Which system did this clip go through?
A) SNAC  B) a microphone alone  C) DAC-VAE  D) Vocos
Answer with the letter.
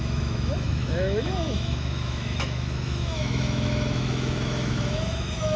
C